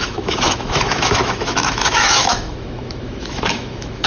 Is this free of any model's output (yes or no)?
no